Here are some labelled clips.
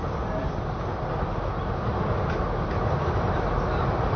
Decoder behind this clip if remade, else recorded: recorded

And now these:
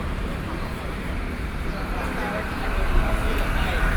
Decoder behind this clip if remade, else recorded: remade, vocoder, BigVGAN v2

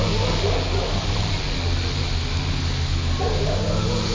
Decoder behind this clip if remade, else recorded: recorded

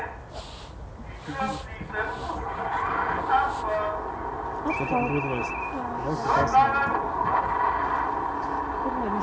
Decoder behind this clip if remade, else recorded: recorded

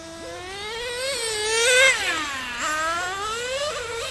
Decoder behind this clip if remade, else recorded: recorded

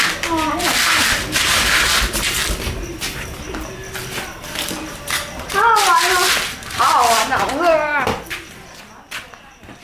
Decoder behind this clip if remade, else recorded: recorded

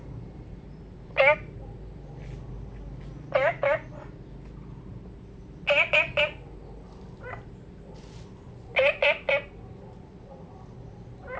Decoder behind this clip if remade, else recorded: recorded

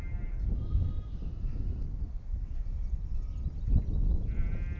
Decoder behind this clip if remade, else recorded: recorded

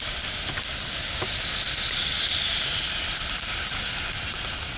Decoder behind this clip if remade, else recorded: recorded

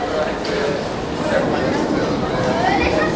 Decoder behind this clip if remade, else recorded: remade, vocoder, BigVGAN v2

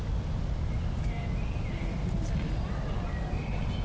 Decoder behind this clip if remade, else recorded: recorded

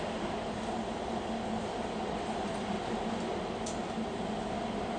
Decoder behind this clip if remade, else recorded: recorded